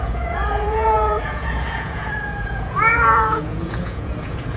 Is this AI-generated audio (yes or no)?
yes